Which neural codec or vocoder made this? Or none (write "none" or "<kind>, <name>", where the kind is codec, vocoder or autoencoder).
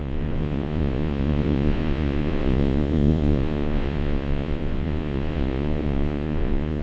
vocoder, Vocos